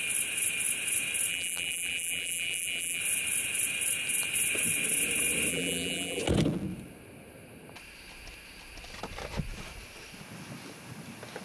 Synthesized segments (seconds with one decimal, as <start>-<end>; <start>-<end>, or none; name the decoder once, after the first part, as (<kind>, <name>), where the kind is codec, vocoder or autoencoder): 1.3-3.0 (vocoder, BigVGAN v2); 5.5-6.2